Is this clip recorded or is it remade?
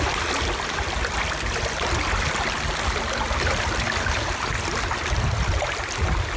recorded